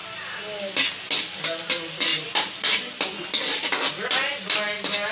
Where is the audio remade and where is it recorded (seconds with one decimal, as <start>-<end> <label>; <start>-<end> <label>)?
0.0-5.1 recorded